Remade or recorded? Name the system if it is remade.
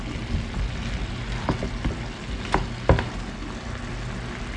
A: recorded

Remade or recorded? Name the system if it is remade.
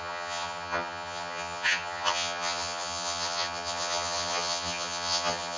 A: remade, vocoder, HiFi-GAN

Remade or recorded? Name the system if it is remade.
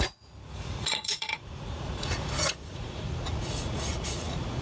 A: remade, vocoder, Vocos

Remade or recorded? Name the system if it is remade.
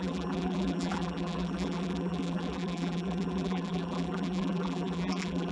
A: remade, vocoder, BigVGAN v2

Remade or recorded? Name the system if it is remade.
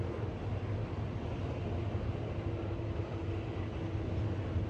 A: recorded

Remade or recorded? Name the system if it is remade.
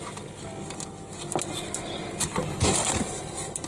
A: recorded